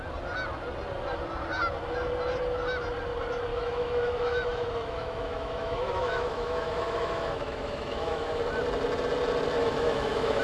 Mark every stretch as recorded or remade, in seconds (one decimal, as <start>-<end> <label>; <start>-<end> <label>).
0.0-3.5 recorded; 3.5-8.4 remade; 8.4-9.6 recorded; 9.6-10.4 remade